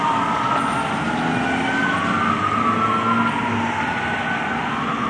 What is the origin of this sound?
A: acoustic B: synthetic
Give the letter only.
A